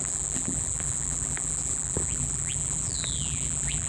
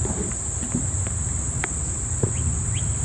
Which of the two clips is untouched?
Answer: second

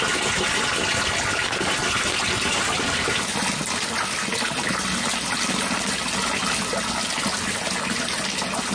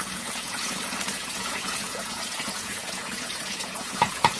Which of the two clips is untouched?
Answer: first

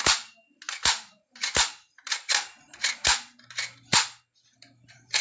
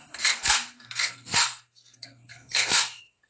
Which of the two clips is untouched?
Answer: first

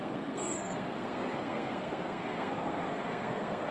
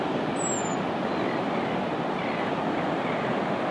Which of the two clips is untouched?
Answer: second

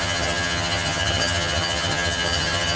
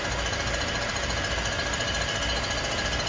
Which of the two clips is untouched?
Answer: second